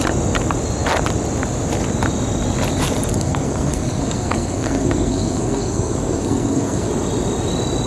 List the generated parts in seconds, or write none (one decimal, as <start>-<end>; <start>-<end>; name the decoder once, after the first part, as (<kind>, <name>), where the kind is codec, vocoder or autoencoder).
3.1-6.9 (codec, SNAC)